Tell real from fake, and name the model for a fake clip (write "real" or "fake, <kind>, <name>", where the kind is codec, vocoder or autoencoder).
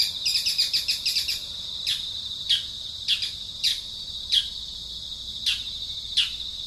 real